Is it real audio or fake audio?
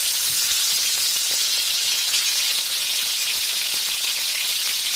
fake